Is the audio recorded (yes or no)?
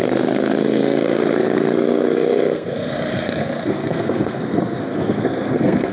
no